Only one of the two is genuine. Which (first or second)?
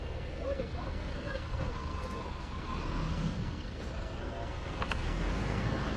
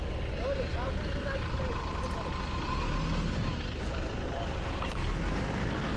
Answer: second